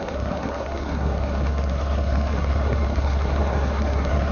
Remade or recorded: remade